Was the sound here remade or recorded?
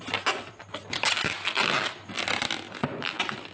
recorded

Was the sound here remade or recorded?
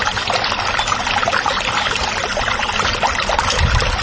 recorded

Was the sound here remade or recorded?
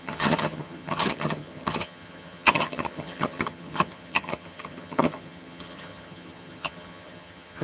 remade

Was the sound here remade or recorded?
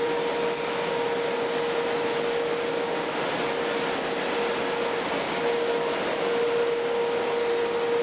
recorded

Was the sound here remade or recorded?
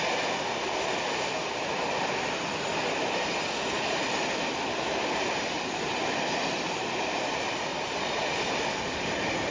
recorded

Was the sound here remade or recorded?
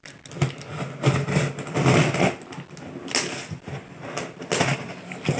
recorded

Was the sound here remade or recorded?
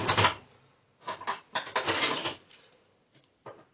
recorded